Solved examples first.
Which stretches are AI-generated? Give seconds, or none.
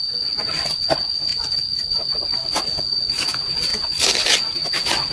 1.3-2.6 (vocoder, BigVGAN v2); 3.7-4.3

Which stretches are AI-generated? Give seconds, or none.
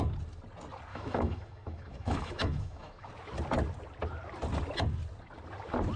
0.9-3.1 (autoencoder, DAC-VAE)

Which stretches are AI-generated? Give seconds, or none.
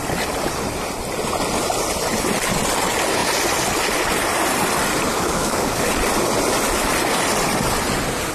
5.1-5.9 (codec, DAC)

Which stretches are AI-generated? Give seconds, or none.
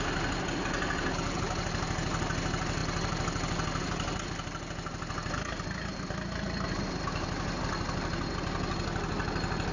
none